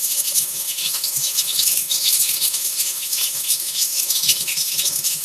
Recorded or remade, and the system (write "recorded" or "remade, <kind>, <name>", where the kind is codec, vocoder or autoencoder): remade, autoencoder, DAC-VAE